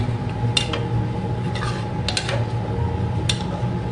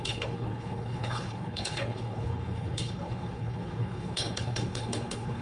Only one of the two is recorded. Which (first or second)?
first